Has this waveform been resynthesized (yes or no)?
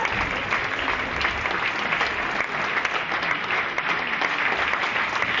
no